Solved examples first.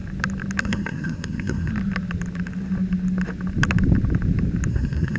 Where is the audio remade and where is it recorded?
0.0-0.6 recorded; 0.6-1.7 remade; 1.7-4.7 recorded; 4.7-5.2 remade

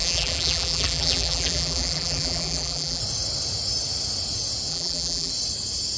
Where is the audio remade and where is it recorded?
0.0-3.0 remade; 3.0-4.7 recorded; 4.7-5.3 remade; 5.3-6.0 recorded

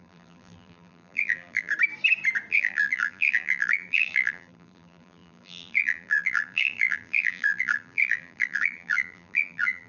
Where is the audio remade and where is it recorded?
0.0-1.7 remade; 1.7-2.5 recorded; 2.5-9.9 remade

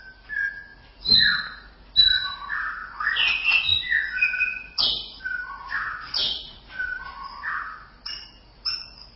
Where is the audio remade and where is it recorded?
0.0-2.8 recorded; 2.8-5.2 remade; 5.2-6.2 recorded; 6.2-7.6 remade; 7.6-9.2 recorded

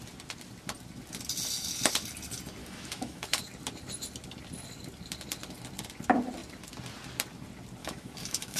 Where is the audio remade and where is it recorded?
0.0-2.6 recorded; 2.6-3.4 remade; 3.4-7.8 recorded; 7.8-8.6 remade